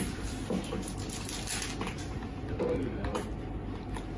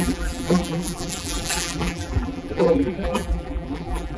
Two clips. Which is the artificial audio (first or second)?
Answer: second